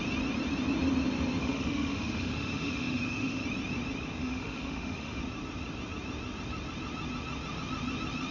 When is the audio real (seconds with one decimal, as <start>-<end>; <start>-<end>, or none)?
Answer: 0.0-1.4; 3.4-4.2; 5.2-8.3